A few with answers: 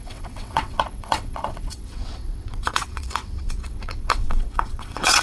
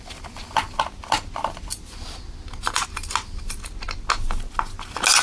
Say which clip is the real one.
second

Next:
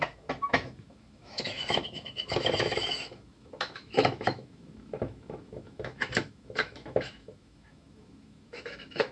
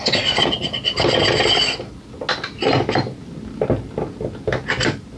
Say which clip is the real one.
second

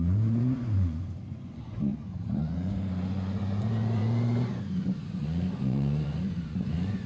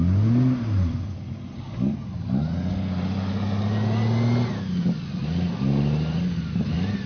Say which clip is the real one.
second